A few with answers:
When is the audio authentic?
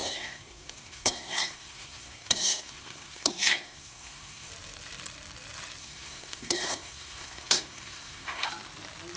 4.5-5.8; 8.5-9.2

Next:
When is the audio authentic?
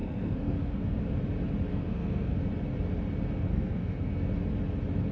1.0-1.7; 2.4-3.5; 4.1-5.1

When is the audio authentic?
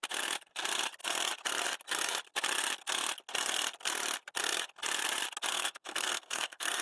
0.0-5.5